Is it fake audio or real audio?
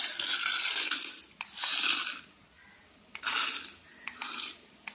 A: real